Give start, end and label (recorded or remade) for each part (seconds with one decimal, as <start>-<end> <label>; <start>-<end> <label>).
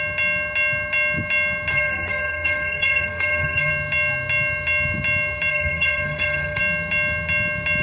0.0-1.7 recorded; 1.7-3.7 remade; 3.7-5.5 recorded; 5.5-6.6 remade; 6.6-7.8 recorded